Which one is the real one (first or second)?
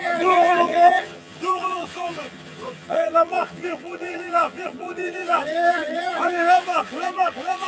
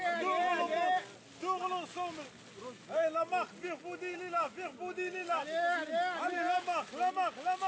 second